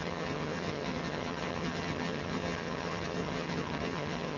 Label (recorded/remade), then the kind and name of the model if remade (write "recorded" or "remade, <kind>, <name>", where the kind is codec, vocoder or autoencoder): remade, vocoder, HiFi-GAN